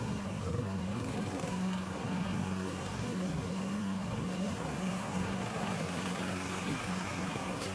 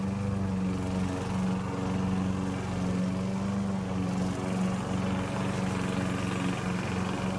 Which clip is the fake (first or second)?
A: first